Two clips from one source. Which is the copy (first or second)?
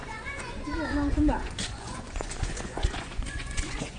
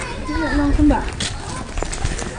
first